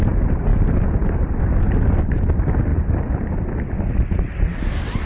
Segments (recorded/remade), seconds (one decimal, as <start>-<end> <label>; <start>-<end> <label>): 0.0-5.1 recorded